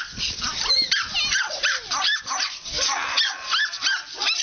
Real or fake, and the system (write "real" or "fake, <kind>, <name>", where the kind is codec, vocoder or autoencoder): real